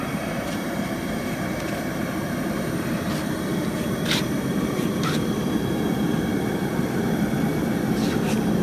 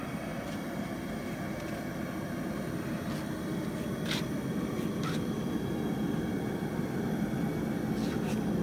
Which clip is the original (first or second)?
second